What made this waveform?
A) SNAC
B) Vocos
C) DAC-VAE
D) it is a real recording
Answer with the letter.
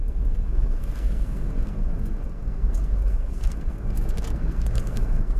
A